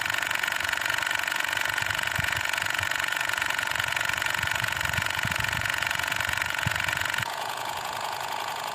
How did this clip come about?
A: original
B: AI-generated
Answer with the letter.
B